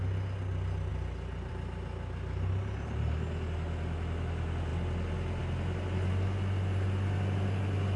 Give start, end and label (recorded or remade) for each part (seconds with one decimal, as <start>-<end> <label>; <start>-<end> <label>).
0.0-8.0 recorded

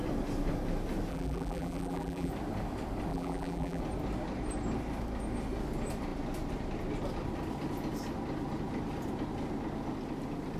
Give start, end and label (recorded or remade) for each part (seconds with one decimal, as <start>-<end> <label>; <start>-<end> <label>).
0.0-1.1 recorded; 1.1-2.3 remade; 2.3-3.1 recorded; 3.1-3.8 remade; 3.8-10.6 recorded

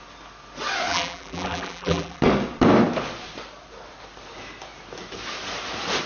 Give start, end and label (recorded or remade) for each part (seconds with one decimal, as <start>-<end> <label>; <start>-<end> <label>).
0.0-0.9 recorded; 0.9-2.2 remade; 2.2-6.1 recorded

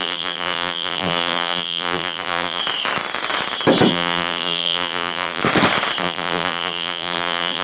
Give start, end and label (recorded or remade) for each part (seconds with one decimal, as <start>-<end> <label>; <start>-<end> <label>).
0.0-2.6 remade; 2.6-3.9 recorded; 3.9-5.4 remade; 5.4-6.0 recorded; 6.0-7.6 remade

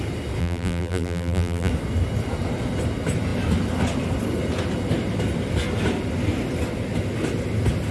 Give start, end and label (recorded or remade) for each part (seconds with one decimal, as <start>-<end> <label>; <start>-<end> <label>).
0.0-0.4 recorded; 0.4-1.7 remade; 1.7-7.9 recorded